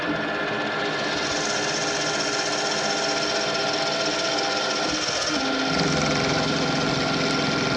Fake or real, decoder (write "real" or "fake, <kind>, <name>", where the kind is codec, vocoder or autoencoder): real